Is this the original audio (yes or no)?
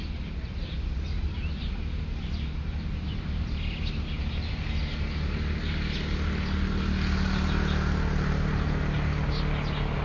yes